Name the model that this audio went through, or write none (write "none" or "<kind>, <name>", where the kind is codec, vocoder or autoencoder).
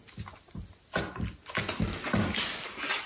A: none